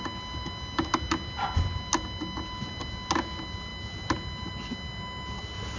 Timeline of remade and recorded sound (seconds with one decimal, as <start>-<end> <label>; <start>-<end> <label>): 0.0-5.8 recorded